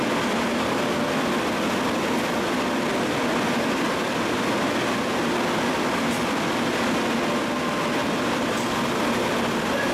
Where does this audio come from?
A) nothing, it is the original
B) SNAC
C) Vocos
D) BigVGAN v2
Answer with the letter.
A